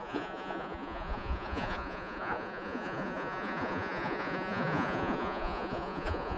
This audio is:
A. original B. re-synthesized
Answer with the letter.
B